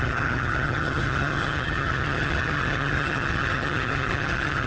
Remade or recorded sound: remade